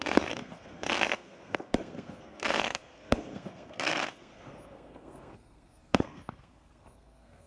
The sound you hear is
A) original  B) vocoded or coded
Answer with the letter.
B